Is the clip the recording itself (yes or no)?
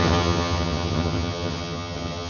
no